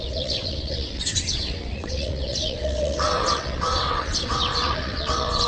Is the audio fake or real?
fake